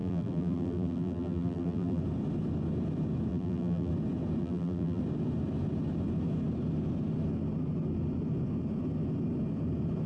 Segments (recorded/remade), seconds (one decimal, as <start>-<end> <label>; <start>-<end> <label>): 0.0-2.0 remade; 2.0-3.3 recorded; 3.3-3.9 remade; 3.9-4.4 recorded; 4.4-5.0 remade; 5.0-10.1 recorded